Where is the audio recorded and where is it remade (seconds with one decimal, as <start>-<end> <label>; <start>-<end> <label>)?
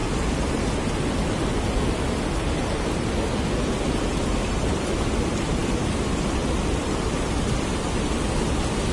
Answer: 0.0-8.9 recorded